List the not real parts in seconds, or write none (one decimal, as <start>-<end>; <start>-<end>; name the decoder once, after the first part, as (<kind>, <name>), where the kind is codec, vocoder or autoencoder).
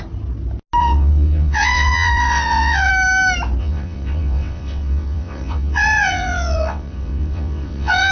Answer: 0.8-2.9 (vocoder, WaveNeXt); 3.6-8.1